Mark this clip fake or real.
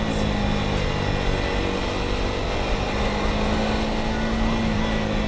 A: real